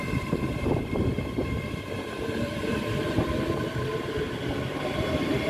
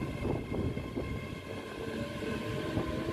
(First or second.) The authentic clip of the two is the second